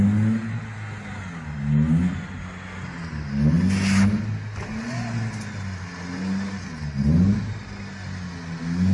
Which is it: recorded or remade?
recorded